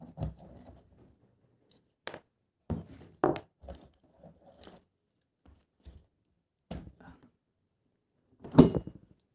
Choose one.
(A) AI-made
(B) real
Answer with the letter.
B